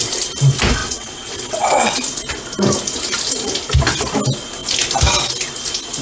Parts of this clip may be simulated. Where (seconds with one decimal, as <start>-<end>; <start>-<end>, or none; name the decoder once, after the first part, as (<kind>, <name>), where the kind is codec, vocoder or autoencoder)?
0.8-1.9 (vocoder, WaveNeXt)